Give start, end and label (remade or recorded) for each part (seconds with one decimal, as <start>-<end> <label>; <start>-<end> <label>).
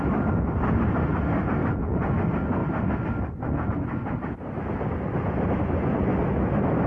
0.0-6.9 recorded